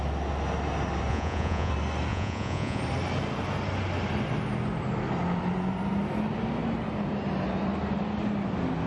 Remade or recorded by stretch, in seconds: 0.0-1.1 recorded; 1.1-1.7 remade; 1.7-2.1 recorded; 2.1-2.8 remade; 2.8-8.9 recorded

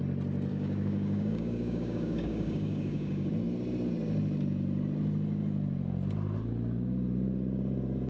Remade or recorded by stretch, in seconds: 0.0-0.5 recorded; 0.5-3.3 remade; 3.3-8.1 recorded

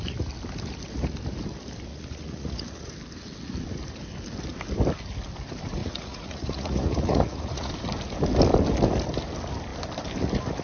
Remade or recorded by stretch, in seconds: 0.0-1.9 recorded; 1.9-2.9 remade; 2.9-5.8 recorded; 5.8-7.7 remade; 7.7-10.6 recorded

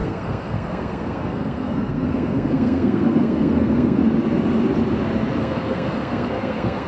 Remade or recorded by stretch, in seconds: 0.0-4.0 remade; 4.0-5.4 recorded; 5.4-6.9 remade

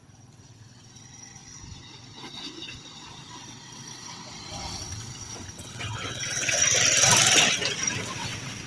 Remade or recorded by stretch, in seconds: 0.0-6.6 remade; 6.6-8.0 recorded; 8.0-8.7 remade